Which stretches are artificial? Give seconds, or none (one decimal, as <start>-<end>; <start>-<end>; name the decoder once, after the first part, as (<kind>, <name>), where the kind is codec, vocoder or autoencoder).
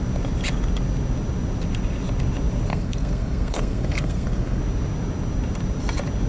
2.7-4.6 (codec, SNAC)